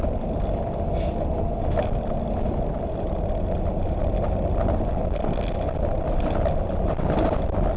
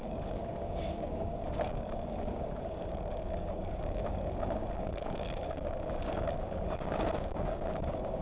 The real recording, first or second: first